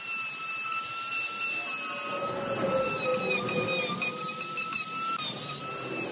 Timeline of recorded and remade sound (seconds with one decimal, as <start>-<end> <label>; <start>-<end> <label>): 0.0-6.1 recorded